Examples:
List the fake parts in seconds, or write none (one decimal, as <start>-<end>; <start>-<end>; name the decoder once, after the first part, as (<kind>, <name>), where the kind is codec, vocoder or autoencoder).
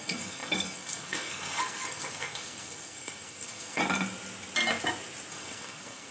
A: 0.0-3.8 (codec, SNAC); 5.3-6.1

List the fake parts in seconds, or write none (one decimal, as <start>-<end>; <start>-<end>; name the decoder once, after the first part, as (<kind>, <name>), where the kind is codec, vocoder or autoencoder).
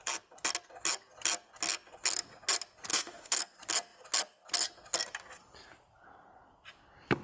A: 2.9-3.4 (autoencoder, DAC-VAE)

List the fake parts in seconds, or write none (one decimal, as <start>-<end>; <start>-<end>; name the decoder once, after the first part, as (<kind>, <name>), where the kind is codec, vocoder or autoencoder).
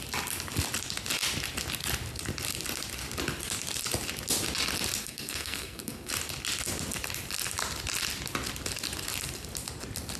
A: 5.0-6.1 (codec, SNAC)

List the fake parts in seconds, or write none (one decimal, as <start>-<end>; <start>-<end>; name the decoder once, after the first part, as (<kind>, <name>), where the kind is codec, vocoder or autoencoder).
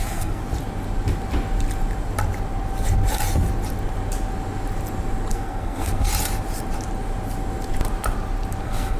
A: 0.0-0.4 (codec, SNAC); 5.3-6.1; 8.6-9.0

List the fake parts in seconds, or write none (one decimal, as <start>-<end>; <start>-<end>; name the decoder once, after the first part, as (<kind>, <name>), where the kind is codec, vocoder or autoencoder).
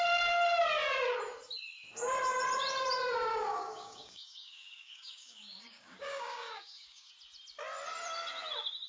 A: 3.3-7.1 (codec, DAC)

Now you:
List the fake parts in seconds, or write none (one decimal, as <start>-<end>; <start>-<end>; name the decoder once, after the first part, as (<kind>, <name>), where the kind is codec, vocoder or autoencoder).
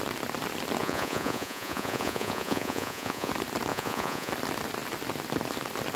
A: 0.8-3.3 (vocoder, Vocos); 3.7-4.3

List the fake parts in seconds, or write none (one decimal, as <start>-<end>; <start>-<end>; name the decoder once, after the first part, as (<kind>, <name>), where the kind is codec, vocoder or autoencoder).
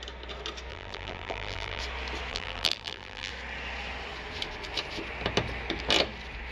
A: 0.7-1.8 (vocoder, BigVGAN v2); 2.3-3.3